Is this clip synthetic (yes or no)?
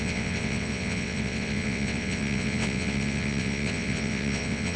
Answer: yes